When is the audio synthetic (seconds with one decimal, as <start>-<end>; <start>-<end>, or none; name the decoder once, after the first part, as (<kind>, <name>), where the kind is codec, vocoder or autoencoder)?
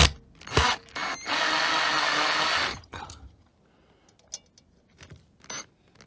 2.7-3.5 (vocoder, HiFi-GAN)